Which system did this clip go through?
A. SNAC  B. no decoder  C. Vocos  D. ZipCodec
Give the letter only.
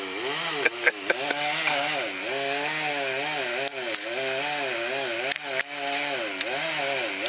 B